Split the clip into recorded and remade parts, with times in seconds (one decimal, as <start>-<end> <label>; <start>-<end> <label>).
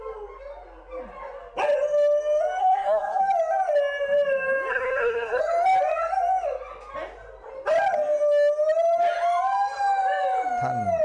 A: 0.0-2.6 recorded; 2.6-3.2 remade; 3.2-4.7 recorded; 4.7-5.4 remade; 5.4-11.0 recorded